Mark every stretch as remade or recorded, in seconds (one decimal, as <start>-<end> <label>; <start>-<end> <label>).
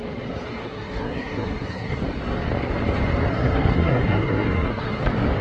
0.0-0.6 recorded; 0.6-2.0 remade; 2.0-3.3 recorded; 3.3-5.0 remade; 5.0-5.4 recorded